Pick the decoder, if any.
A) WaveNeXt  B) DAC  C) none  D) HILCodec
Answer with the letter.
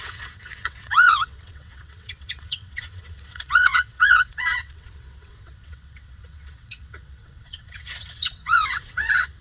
A